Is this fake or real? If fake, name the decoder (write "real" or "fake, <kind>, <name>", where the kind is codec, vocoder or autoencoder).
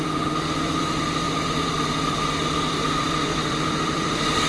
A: fake, vocoder, BigVGAN v2